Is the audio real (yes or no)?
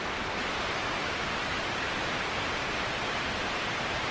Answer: yes